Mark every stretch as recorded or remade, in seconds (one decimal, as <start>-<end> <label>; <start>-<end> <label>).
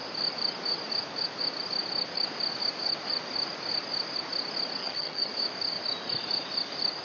0.0-4.8 recorded; 4.8-5.3 remade; 5.3-7.0 recorded